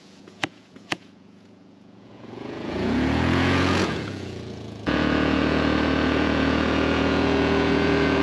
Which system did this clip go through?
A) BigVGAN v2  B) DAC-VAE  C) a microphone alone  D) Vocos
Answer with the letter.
D